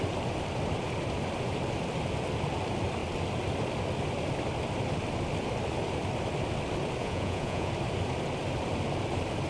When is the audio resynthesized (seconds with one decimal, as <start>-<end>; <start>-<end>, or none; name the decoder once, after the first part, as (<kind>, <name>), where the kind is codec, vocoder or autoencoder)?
7.0-7.7 (vocoder, Vocos)